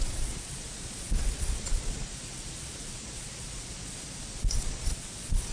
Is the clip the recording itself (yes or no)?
no